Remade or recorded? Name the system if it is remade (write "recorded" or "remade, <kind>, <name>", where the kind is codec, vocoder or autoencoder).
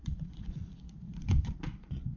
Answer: remade, vocoder, Vocos